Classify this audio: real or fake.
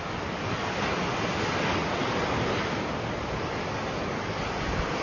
real